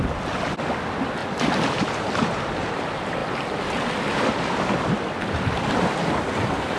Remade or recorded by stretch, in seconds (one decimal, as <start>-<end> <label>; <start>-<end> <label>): 0.0-6.8 recorded